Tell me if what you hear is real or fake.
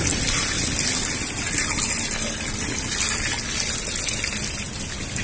real